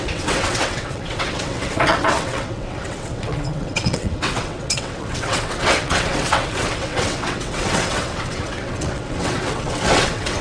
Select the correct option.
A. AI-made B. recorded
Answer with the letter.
A